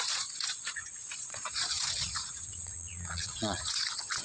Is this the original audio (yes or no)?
no